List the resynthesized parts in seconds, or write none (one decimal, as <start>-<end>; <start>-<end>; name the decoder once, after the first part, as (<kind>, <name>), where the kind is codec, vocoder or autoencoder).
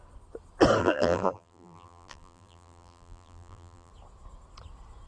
0.8-3.9 (vocoder, BigVGAN v2)